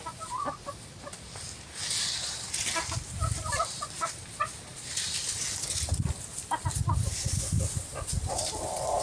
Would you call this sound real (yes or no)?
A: no